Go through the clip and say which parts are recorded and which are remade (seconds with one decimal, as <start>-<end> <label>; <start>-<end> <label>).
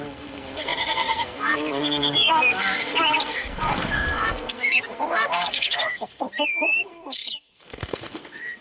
0.0-8.6 remade